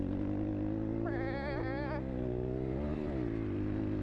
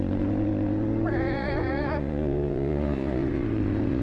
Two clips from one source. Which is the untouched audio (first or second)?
first